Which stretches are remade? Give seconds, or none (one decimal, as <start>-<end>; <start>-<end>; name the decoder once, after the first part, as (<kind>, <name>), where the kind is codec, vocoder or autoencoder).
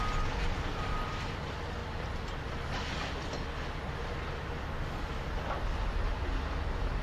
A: none